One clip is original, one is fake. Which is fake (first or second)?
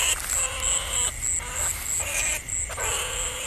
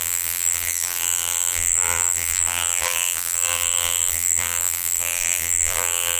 second